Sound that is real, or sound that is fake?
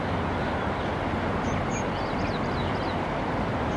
real